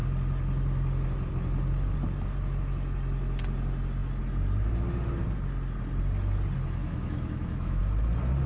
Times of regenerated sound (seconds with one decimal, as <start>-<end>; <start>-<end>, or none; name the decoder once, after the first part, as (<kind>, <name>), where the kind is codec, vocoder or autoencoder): 6.8-7.8 (autoencoder, DAC-VAE)